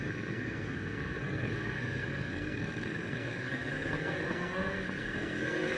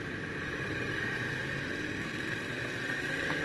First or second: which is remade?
first